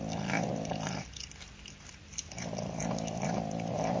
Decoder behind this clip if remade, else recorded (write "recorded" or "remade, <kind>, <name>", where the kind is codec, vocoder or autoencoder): recorded